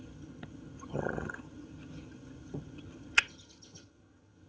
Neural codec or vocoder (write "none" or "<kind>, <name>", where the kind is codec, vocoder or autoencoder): vocoder, HiFi-GAN